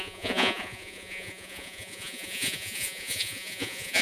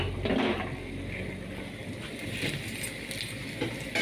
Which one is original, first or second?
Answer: second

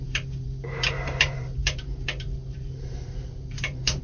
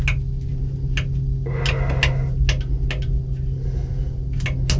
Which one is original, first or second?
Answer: second